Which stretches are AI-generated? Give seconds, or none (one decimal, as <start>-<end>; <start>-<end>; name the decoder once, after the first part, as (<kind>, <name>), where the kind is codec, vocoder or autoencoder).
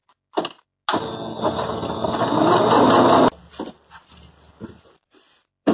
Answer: 3.4-5.7 (vocoder, BigVGAN v2)